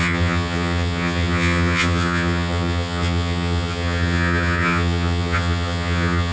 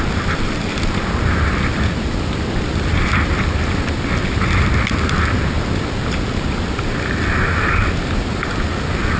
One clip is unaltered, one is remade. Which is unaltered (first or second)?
second